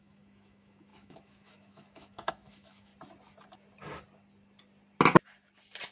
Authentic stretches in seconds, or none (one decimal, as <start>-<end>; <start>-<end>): 2.9-5.9